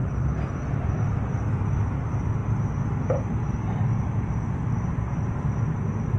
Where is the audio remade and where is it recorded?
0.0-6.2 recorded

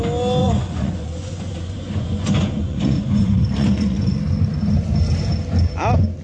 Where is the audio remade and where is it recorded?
0.0-0.4 recorded; 0.4-4.1 remade; 4.1-6.2 recorded

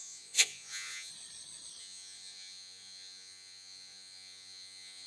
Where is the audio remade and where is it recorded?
0.0-1.1 remade; 1.1-1.8 recorded; 1.8-5.1 remade

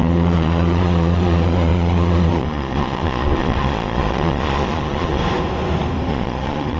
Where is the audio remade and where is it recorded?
0.0-5.2 remade; 5.2-6.1 recorded; 6.1-6.8 remade

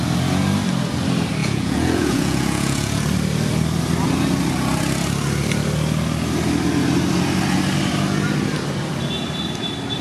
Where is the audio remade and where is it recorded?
0.0-1.4 recorded; 1.4-3.0 remade; 3.0-10.0 recorded

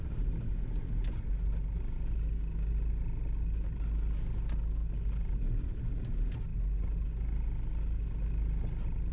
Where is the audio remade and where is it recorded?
0.0-9.1 recorded